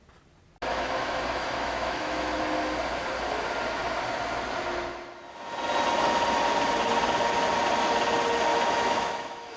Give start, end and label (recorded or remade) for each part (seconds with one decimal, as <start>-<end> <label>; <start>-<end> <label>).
0.0-0.7 recorded; 0.7-2.4 remade; 2.4-8.5 recorded; 8.5-9.6 remade